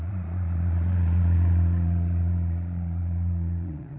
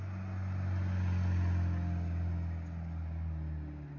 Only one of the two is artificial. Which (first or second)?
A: first